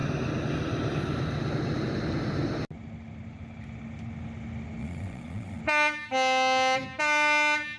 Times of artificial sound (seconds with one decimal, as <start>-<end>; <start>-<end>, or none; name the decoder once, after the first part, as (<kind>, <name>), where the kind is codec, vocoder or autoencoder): 4.8-5.6 (vocoder, Vocos)